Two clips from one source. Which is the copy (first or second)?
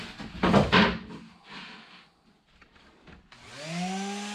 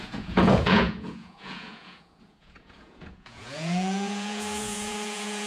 second